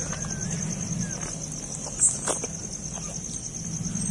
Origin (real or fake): real